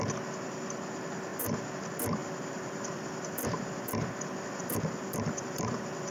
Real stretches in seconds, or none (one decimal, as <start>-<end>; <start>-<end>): 0.0-2.2